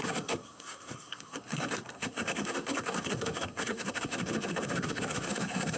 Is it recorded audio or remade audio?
remade